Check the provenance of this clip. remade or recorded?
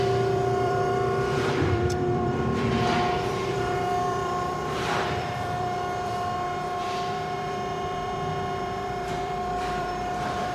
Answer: remade